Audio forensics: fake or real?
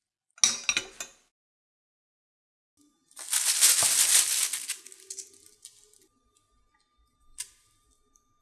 real